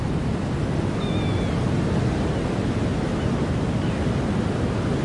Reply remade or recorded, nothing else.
recorded